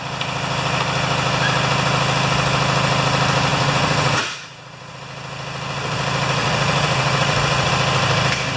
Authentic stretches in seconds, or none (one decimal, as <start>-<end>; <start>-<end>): 0.0-3.5; 4.9-6.4; 7.7-8.6